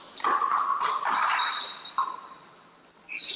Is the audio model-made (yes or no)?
no